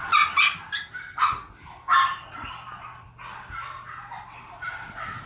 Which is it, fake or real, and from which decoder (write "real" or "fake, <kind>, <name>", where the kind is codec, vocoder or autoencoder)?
real